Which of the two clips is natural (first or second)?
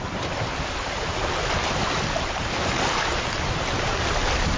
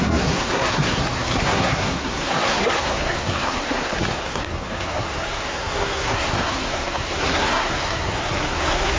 first